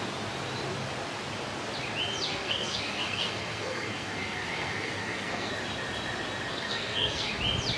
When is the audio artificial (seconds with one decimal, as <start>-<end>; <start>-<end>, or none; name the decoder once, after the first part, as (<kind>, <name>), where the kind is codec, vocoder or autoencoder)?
2.3-5.5 (codec, SNAC); 6.5-7.3